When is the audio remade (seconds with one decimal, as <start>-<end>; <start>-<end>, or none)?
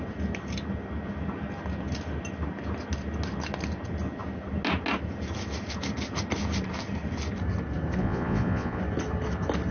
8.0-8.8